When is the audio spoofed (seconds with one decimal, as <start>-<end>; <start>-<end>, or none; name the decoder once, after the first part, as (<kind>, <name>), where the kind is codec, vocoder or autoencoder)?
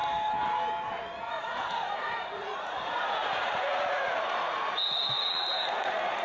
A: 1.3-6.2 (vocoder, Vocos)